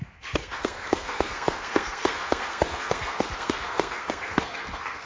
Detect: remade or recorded remade